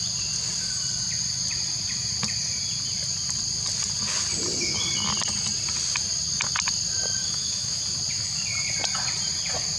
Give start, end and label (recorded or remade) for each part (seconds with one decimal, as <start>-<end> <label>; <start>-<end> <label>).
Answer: 0.0-7.2 recorded; 7.2-7.8 remade; 7.8-9.8 recorded